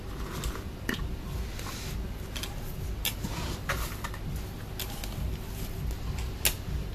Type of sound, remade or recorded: recorded